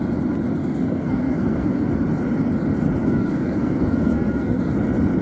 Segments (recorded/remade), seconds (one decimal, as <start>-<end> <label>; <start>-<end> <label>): 0.0-0.6 recorded; 0.6-1.9 remade; 1.9-3.0 recorded; 3.0-4.6 remade; 4.6-5.2 recorded